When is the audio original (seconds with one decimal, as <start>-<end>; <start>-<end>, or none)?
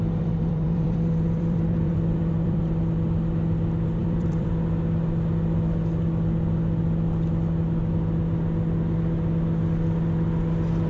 2.6-4.0; 4.5-10.9